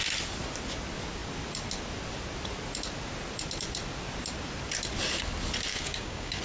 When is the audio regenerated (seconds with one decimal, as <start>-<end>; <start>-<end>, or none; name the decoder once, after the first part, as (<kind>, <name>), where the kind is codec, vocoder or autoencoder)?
5.7-6.4 (codec, DAC)